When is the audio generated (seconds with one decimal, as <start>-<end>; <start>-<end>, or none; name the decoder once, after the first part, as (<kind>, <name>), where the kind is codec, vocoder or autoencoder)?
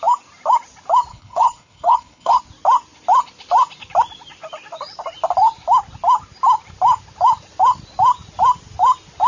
1.1-2.4 (codec, HILCodec)